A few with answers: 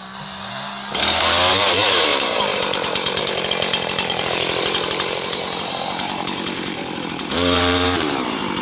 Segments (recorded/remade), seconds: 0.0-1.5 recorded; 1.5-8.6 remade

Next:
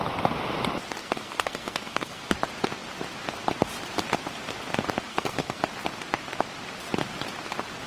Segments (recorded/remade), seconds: 0.0-1.0 recorded; 1.0-2.3 remade; 2.3-5.1 recorded; 5.1-5.6 remade; 5.6-7.9 recorded

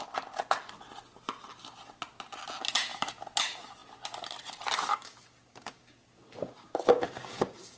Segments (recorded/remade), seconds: 0.0-4.9 recorded; 4.9-7.8 remade

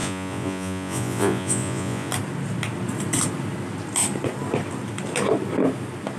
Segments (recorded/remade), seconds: 0.0-2.1 remade; 2.1-6.2 recorded

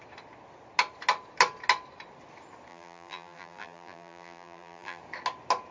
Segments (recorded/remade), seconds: 0.0-2.7 recorded; 2.7-5.0 remade; 5.0-5.7 recorded

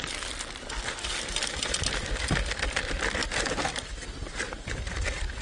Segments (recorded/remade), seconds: 0.0-3.2 recorded; 3.2-3.9 remade; 3.9-5.4 recorded

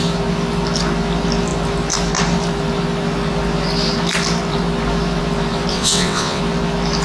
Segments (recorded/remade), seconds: 0.0-5.7 recorded; 5.7-6.4 remade; 6.4-7.0 recorded